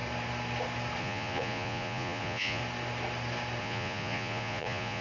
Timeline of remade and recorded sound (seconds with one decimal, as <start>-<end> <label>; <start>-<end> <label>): 0.0-1.0 recorded; 1.0-2.6 remade; 2.6-3.6 recorded; 3.6-5.0 remade